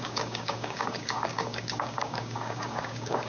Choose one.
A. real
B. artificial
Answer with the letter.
B